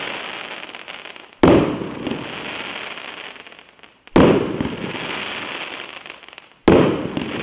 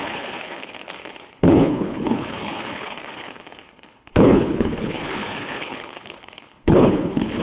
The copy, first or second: second